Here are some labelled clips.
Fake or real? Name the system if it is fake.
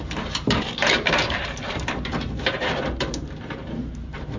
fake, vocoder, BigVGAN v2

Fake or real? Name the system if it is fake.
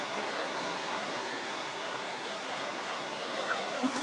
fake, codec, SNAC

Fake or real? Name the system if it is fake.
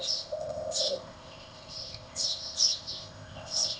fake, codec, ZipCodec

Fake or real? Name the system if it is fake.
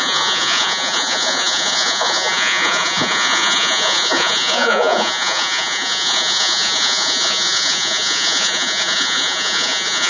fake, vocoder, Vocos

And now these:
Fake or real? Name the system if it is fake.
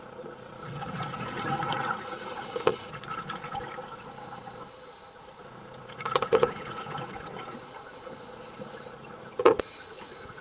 fake, vocoder, Vocos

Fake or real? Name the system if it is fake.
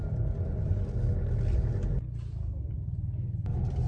real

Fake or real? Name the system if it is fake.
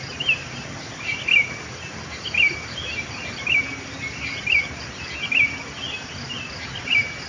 real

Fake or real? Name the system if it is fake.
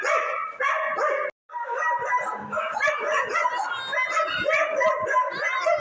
real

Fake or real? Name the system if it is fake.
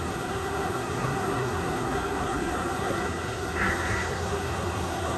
fake, codec, SNAC